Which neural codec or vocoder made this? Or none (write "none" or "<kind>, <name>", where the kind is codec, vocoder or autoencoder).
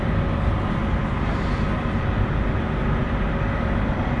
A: none